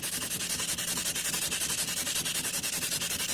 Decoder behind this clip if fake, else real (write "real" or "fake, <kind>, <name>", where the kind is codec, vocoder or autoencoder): real